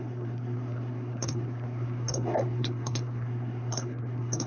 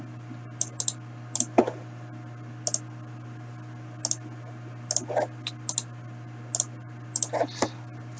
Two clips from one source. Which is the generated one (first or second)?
first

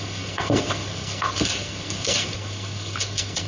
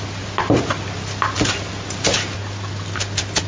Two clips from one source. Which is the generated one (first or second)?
first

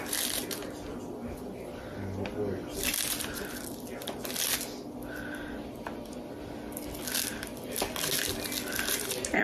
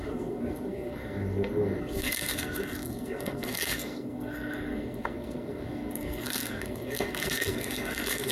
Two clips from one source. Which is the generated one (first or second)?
second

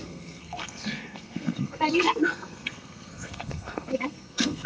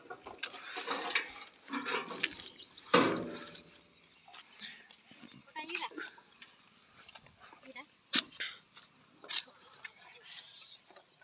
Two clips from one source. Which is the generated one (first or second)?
first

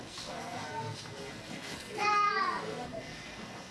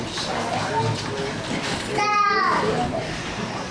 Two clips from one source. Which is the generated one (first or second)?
first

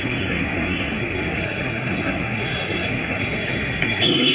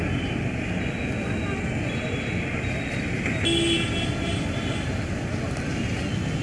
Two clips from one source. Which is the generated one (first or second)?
first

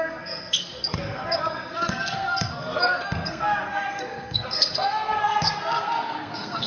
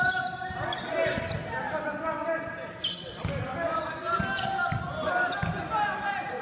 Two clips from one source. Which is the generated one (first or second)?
first